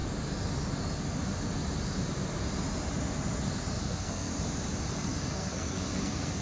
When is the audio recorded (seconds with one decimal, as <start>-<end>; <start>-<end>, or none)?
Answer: 0.0-3.8; 4.3-4.9